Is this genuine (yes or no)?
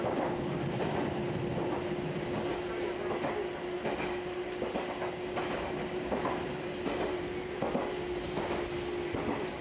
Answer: yes